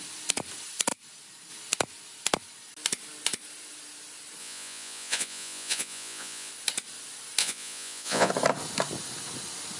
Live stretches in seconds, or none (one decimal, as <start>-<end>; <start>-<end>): 0.0-4.4; 6.5-7.4; 8.3-9.8